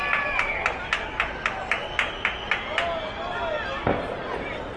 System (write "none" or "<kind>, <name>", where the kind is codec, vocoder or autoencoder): none